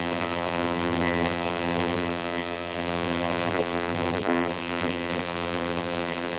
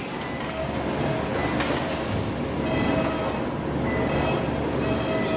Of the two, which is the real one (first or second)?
second